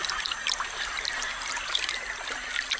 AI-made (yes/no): no